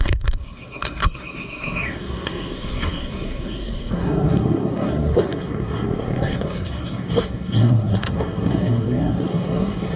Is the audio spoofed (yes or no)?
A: yes